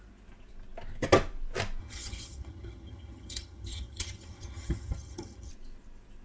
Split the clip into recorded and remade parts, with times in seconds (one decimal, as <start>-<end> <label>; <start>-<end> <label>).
0.0-1.8 recorded; 1.8-5.5 remade; 5.5-6.2 recorded